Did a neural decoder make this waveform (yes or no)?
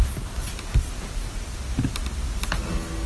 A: no